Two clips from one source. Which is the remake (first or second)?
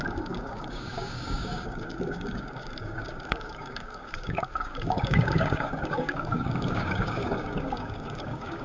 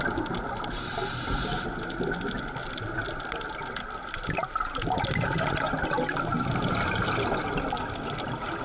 first